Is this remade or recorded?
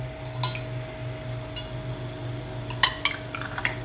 recorded